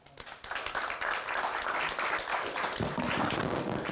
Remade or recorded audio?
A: recorded